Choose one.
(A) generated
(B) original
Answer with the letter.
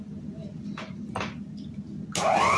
B